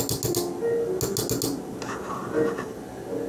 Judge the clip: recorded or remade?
recorded